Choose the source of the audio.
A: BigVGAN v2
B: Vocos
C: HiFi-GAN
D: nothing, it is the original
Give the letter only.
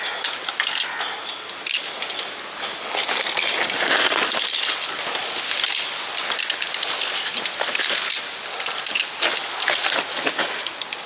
D